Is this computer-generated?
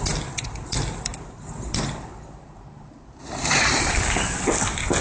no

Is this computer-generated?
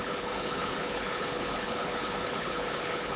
yes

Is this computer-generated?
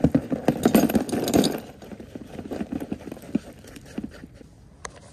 no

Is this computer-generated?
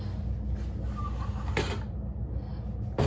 no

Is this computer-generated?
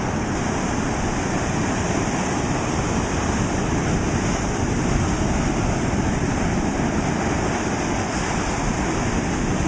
no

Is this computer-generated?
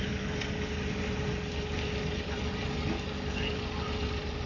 no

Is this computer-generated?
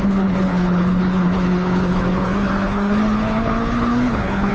yes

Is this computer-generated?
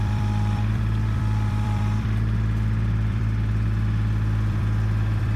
yes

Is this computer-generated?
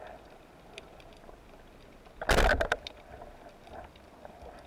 no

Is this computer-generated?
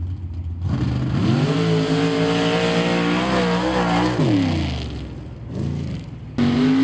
no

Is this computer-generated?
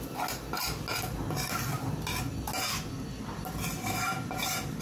no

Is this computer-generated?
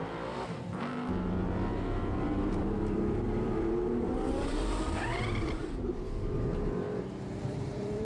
yes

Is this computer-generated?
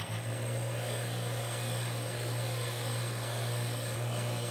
yes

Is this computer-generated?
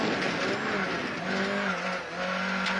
no